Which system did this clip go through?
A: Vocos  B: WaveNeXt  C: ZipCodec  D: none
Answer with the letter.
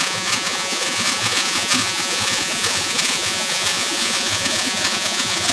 A